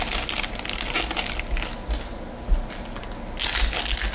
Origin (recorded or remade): recorded